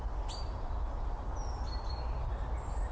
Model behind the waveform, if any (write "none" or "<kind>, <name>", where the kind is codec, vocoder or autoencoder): none